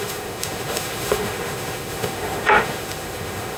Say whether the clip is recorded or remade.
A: remade